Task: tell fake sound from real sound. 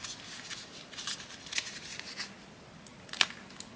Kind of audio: real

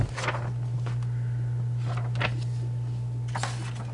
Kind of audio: real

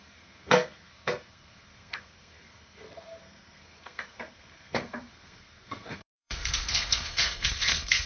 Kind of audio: fake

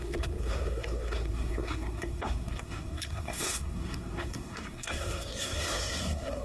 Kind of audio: fake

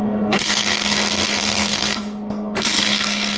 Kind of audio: fake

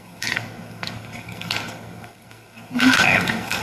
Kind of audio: fake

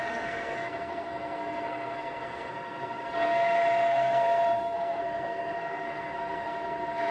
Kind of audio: fake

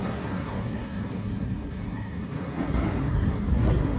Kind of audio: fake